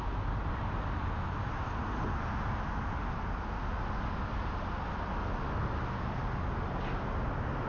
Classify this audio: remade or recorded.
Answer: recorded